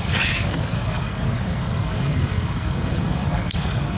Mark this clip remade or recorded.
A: remade